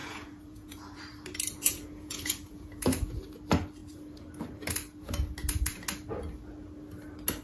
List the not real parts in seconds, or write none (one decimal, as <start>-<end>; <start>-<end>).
0.0-1.0; 1.6-3.1

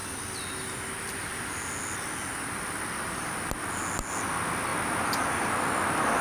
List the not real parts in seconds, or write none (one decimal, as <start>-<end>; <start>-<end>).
none